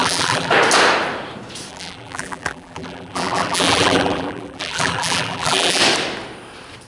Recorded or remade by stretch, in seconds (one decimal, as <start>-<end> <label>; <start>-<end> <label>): 0.0-0.5 remade; 0.5-1.7 recorded; 1.7-5.8 remade; 5.8-6.9 recorded